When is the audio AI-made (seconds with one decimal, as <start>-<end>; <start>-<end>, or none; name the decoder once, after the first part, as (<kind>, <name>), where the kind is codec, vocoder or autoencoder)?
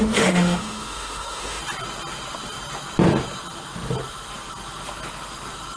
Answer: 0.0-1.6 (autoencoder, DAC-VAE)